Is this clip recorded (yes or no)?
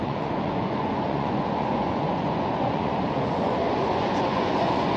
no